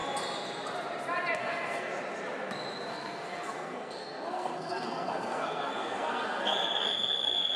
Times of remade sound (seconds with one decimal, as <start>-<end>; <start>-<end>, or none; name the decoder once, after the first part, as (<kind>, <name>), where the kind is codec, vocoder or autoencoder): 1.4-1.9 (codec, SNAC); 2.9-7.6